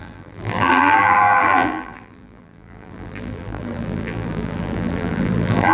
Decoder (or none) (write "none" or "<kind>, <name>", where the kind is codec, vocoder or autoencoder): vocoder, BigVGAN v2